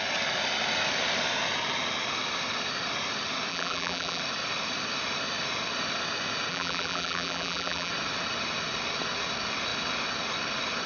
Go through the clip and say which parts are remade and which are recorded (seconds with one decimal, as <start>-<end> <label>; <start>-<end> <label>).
0.0-3.5 recorded; 3.5-4.2 remade; 4.2-6.5 recorded; 6.5-7.9 remade; 7.9-10.9 recorded